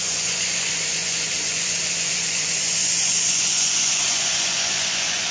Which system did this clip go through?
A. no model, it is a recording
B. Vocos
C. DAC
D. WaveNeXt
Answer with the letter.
B